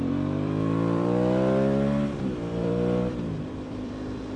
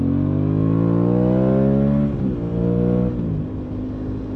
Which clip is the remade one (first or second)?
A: first